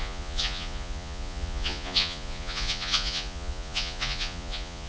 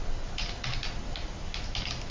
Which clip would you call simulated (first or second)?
first